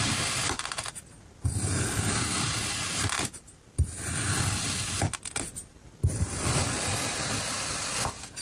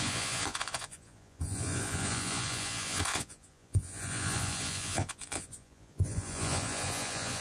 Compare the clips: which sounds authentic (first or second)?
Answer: first